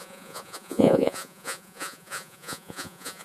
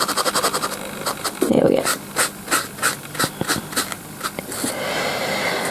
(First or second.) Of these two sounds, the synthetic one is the first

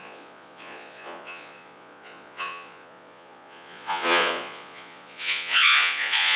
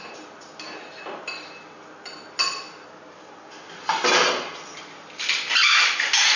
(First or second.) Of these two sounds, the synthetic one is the first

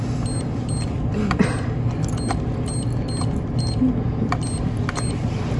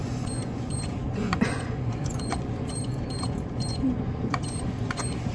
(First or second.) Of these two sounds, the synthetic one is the second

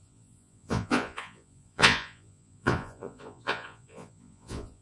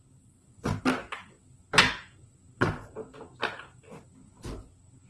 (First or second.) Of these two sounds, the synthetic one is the first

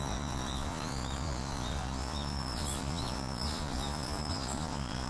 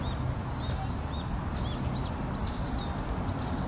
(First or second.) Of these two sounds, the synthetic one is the first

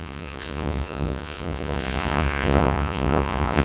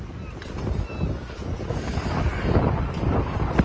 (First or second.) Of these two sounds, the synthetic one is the first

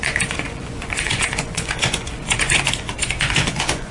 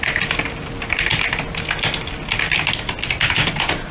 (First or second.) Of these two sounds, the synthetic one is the first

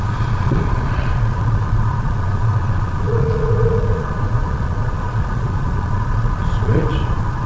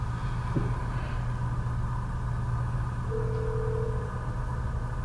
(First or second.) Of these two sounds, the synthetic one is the first